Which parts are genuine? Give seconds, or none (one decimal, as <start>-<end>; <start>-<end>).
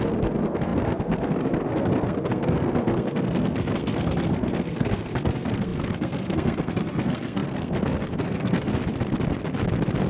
8.8-10.1